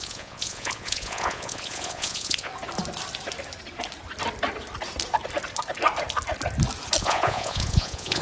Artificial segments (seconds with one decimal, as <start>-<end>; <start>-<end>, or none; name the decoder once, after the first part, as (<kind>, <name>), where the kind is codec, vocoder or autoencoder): 0.0-2.5 (vocoder, Vocos); 7.0-8.2